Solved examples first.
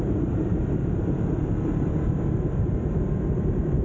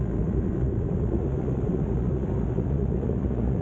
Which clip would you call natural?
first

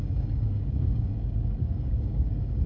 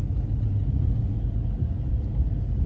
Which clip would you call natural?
second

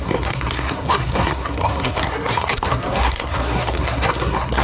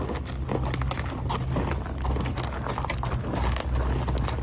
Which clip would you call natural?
second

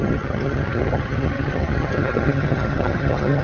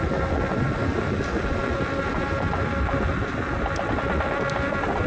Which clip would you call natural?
second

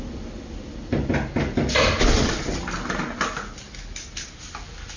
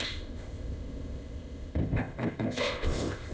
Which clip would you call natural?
first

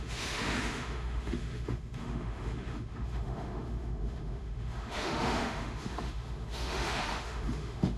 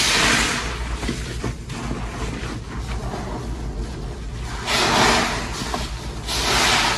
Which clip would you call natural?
second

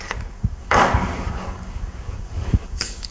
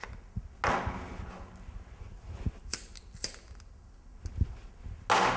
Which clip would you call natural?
second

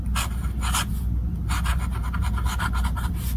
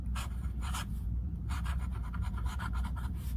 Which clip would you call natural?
first